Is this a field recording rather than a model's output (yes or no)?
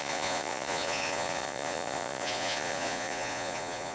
no